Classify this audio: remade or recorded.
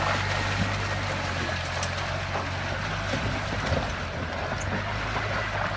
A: recorded